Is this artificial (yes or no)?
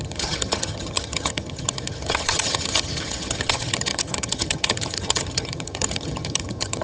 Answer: yes